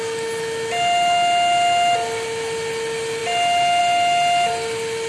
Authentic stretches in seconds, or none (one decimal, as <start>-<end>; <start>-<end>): 0.0-5.1